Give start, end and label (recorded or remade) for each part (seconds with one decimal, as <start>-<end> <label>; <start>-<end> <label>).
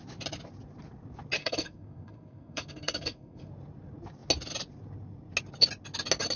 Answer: 0.0-1.4 recorded; 1.4-3.5 remade; 3.5-6.4 recorded